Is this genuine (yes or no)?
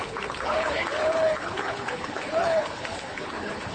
no